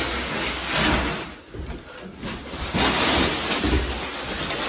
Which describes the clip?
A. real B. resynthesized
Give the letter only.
A